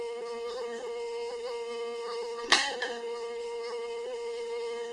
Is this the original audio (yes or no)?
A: no